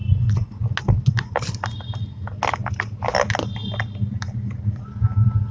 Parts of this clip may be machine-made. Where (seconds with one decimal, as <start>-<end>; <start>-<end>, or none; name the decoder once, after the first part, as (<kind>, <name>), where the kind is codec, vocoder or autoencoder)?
none